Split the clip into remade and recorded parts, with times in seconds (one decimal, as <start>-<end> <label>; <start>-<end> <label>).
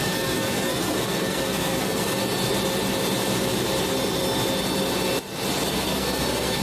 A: 0.0-2.2 remade; 2.2-5.7 recorded; 5.7-6.6 remade